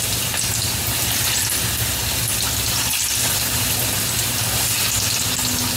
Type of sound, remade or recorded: recorded